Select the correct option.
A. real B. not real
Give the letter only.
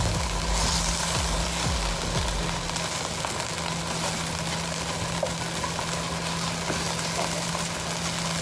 A